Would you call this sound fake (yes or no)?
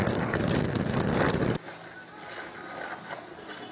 no